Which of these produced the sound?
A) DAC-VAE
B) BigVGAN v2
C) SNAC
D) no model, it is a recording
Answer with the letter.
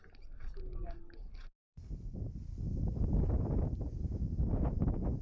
D